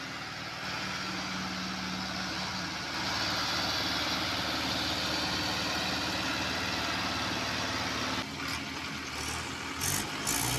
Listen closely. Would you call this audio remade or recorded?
recorded